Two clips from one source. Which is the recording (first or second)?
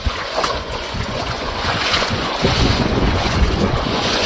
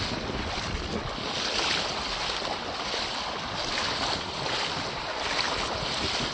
second